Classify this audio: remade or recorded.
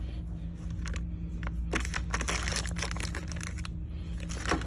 recorded